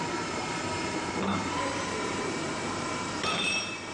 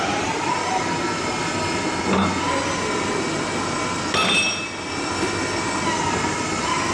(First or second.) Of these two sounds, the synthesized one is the first